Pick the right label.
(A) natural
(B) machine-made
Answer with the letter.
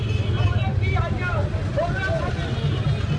A